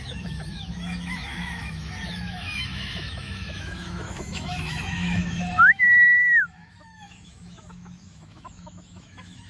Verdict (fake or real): fake